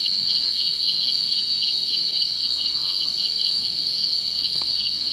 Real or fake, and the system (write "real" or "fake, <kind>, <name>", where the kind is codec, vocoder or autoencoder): fake, codec, SNAC